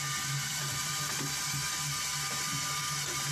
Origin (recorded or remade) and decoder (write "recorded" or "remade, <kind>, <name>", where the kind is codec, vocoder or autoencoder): recorded